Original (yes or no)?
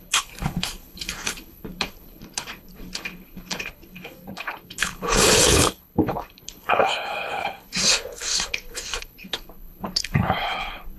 no